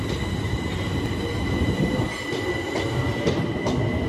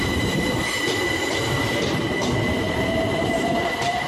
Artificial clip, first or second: second